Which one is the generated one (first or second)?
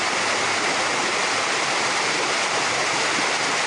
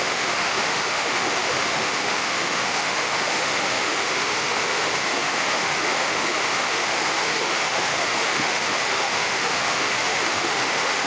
second